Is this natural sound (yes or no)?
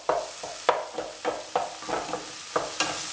yes